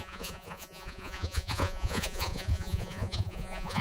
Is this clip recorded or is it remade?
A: remade